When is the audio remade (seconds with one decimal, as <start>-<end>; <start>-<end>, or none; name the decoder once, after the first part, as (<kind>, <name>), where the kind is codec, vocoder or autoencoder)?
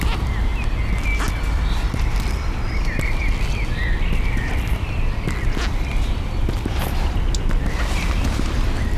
none